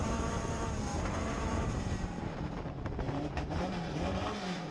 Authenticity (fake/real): fake